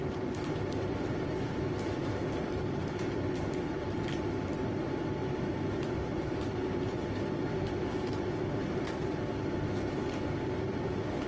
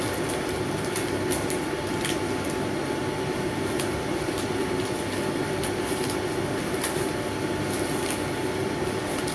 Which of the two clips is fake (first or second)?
first